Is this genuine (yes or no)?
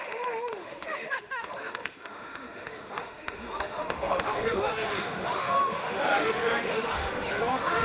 no